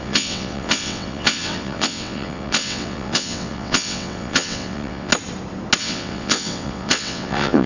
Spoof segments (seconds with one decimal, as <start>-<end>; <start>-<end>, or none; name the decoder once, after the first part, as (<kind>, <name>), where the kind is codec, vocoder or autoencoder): 0.0-5.1 (vocoder, WaveNeXt); 5.8-7.7